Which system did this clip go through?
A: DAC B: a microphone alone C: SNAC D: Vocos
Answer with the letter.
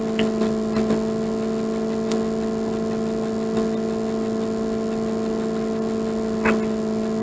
B